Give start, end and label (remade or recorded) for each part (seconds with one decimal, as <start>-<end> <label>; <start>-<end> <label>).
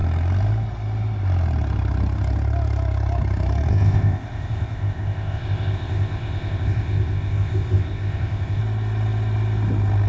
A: 0.0-3.7 recorded; 3.7-8.6 remade; 8.6-10.1 recorded